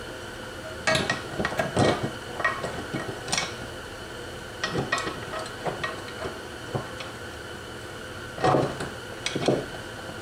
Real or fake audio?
real